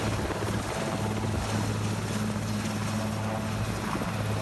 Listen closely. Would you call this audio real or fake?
real